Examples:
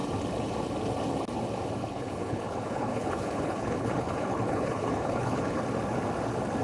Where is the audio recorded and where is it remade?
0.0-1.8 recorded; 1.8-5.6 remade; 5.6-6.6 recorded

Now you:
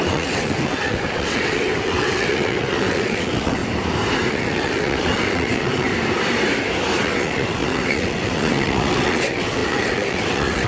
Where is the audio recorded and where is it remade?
0.0-3.6 remade; 3.6-4.3 recorded; 4.3-5.9 remade; 5.9-7.0 recorded; 7.0-10.7 remade

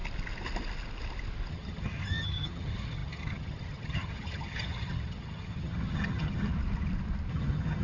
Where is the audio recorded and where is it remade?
0.0-1.5 recorded; 1.5-6.5 remade; 6.5-7.3 recorded; 7.3-7.8 remade

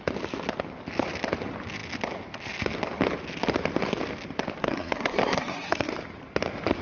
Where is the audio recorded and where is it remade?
0.0-4.6 recorded; 4.6-5.9 remade; 5.9-6.8 recorded

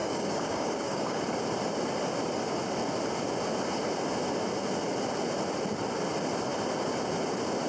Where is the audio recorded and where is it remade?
0.0-1.2 remade; 1.2-7.7 recorded

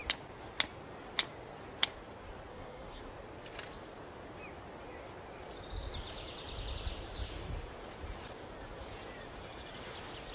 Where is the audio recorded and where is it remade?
0.0-2.5 recorded; 2.5-3.0 remade; 3.0-10.3 recorded

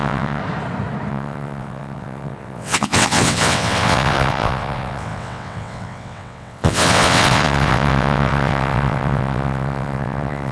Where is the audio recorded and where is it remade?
0.0-0.4 remade; 0.4-1.1 recorded; 1.1-10.5 remade